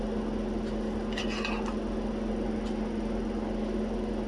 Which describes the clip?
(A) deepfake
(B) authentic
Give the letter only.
B